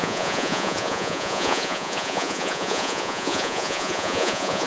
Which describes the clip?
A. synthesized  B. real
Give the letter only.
A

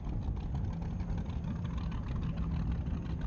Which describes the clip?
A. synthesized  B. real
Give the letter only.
B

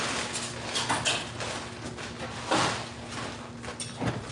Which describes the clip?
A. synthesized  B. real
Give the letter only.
B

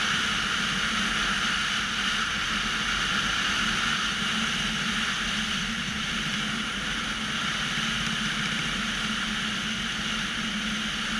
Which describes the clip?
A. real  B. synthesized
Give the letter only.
A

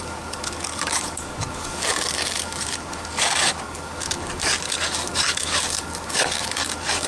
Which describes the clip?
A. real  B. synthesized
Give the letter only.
B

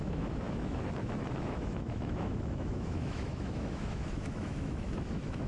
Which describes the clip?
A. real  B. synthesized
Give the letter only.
B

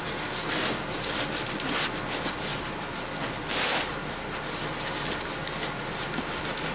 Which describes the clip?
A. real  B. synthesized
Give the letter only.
A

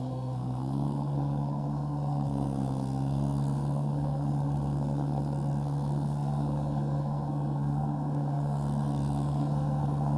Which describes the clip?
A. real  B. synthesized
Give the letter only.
B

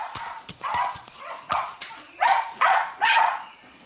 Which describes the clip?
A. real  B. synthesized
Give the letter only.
B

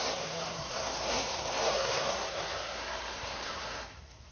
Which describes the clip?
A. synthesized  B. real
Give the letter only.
A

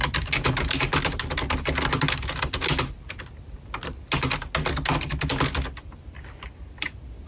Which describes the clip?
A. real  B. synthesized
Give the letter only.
A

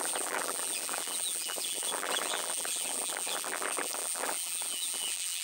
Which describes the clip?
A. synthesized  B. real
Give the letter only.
A